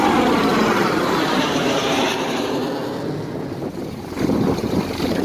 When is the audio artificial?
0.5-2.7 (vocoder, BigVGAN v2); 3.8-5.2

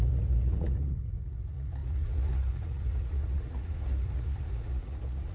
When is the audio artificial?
0.0-5.3 (vocoder, Vocos)

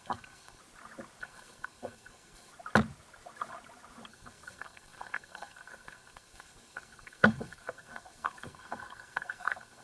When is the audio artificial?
0.0-0.6 (codec, SNAC); 1.2-2.5; 4.1-9.8

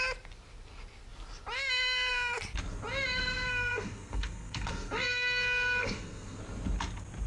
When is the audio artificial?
3.2-6.4 (codec, SNAC)

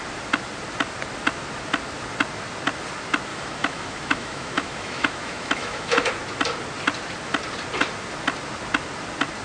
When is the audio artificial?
3.3-6.1 (autoencoder, DAC-VAE)